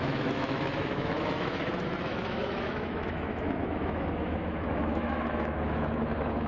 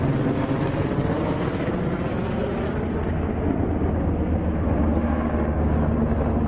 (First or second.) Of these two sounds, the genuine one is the second